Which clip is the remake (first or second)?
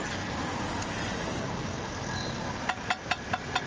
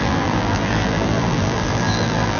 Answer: second